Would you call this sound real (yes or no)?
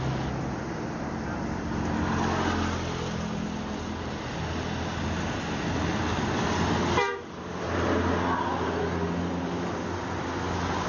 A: yes